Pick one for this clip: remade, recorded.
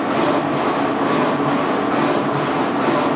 recorded